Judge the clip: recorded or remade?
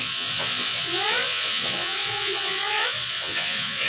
remade